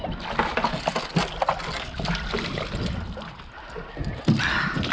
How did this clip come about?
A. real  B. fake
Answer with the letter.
A